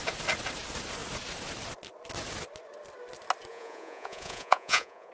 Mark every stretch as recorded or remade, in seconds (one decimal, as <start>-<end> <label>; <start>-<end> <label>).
0.0-3.5 recorded; 3.5-5.1 remade